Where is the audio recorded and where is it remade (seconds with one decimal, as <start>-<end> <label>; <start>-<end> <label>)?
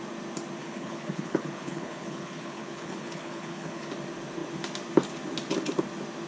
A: 0.0-0.6 recorded; 0.6-3.9 remade; 3.9-6.3 recorded